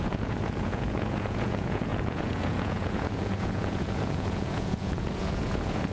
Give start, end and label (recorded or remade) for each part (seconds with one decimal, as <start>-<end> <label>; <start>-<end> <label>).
0.0-5.9 remade